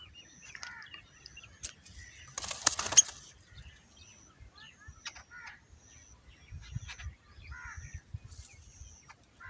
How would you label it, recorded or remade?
recorded